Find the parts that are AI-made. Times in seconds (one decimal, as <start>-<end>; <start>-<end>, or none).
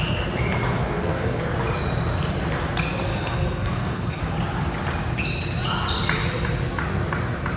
0.8-1.4; 3.1-4.2